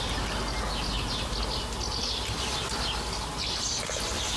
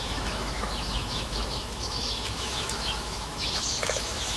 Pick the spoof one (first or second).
second